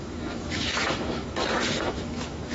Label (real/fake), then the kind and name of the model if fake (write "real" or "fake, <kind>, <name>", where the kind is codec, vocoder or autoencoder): fake, autoencoder, DAC-VAE